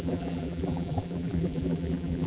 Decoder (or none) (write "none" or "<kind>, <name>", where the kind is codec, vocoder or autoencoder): vocoder, BigVGAN v2